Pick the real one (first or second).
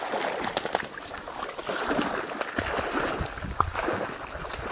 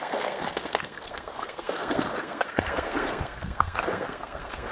first